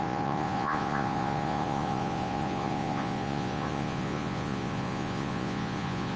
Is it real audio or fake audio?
fake